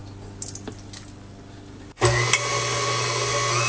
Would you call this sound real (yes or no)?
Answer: yes